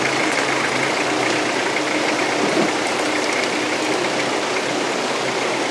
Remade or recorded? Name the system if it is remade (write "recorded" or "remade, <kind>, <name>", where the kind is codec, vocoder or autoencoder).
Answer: recorded